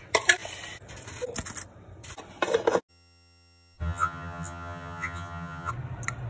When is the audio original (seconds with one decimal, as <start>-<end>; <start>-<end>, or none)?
0.0-2.9; 5.7-6.3